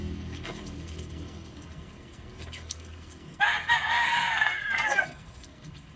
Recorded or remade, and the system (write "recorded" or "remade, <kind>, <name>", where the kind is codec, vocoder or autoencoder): remade, codec, SNAC